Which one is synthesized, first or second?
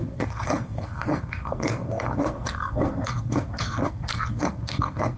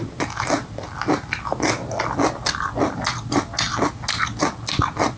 first